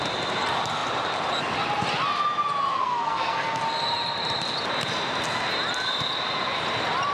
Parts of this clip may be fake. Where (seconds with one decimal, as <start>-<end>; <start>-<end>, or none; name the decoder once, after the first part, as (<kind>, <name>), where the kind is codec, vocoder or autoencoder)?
2.7-3.6 (codec, SNAC)